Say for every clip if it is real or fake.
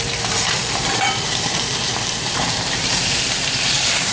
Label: fake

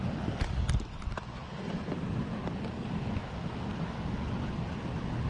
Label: real